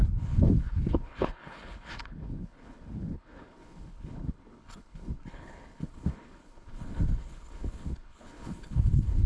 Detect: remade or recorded remade